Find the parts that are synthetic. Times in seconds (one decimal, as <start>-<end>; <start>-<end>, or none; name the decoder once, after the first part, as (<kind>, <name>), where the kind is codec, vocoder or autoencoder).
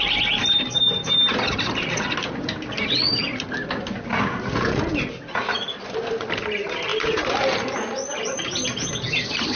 none